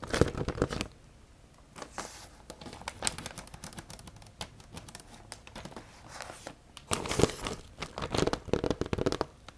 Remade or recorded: recorded